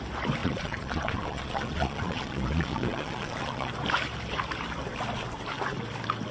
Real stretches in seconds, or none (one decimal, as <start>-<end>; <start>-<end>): 0.0-0.4; 3.7-6.3